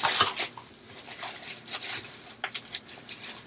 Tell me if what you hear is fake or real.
real